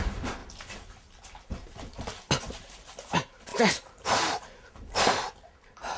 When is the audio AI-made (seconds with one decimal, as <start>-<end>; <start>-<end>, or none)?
0.0-0.4; 2.4-6.0